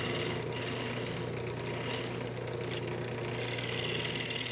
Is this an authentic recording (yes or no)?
yes